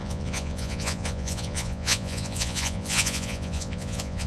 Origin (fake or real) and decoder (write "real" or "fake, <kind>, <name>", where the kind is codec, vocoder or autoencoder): fake, vocoder, Vocos